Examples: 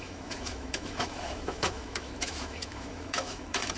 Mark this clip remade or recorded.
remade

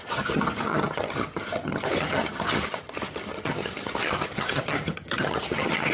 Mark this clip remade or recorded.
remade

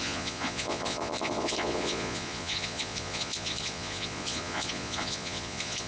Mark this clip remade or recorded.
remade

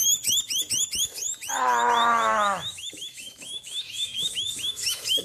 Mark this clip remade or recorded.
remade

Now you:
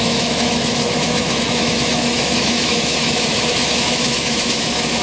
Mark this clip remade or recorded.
remade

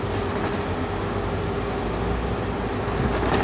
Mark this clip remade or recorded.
recorded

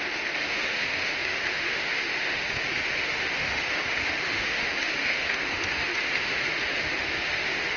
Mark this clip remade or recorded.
remade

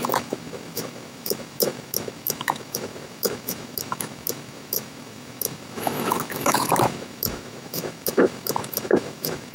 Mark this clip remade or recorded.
remade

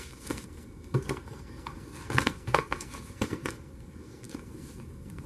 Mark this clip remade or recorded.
remade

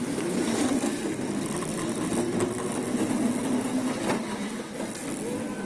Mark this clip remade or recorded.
recorded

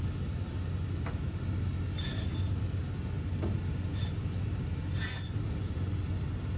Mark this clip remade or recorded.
recorded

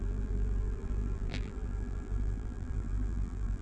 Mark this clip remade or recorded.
remade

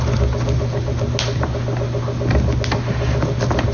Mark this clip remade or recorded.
recorded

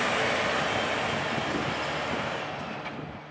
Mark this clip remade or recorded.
recorded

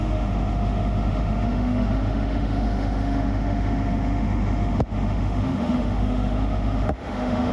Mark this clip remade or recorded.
remade